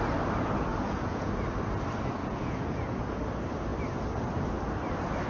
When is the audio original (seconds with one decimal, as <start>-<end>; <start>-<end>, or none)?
0.0-0.7; 1.3-2.2; 3.2-5.3